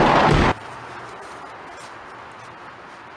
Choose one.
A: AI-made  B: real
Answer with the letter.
B